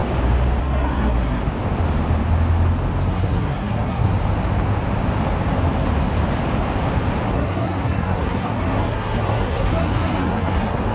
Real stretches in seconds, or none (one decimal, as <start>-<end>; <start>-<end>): 0.0-0.6; 1.4-3.1; 4.1-7.3